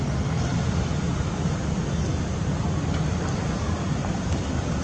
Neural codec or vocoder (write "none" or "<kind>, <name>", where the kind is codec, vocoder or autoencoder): none